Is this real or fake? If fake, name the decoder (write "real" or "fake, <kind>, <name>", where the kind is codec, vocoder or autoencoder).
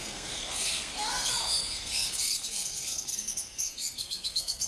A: fake, codec, SNAC